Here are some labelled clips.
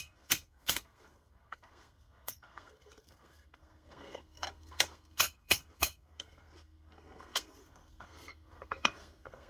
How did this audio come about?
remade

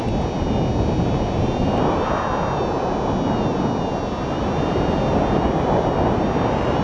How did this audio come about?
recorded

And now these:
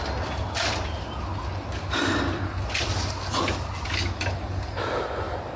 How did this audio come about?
recorded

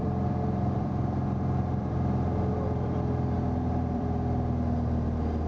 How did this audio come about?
remade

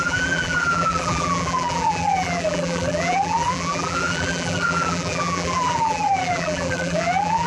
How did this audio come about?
remade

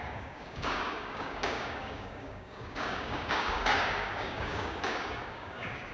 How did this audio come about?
remade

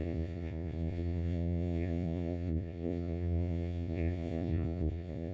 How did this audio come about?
remade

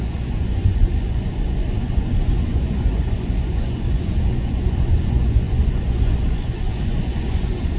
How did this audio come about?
remade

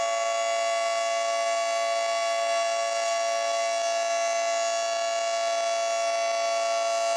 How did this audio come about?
recorded